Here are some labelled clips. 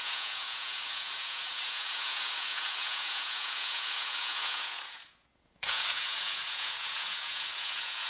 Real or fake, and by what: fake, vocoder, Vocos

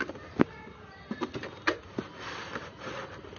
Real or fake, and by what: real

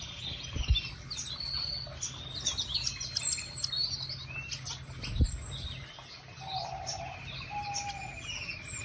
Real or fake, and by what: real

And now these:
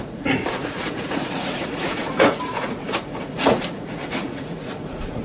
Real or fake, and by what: fake, vocoder, Vocos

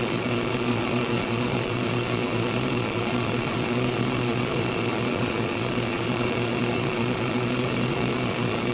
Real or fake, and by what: fake, vocoder, Vocos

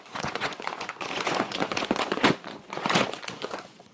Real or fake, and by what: fake, vocoder, Vocos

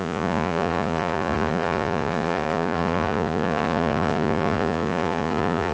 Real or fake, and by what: fake, vocoder, Vocos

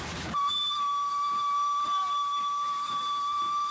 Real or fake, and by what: real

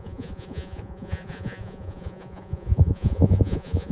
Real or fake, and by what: fake, vocoder, Vocos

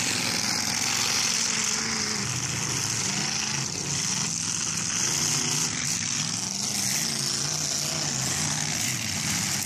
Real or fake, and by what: real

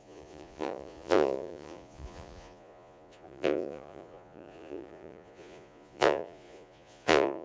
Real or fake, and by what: fake, vocoder, Vocos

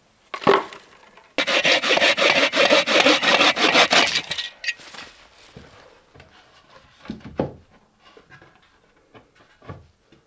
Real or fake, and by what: real